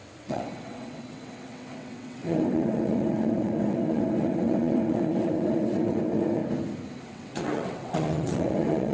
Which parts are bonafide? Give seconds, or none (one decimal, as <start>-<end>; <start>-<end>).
6.4-7.0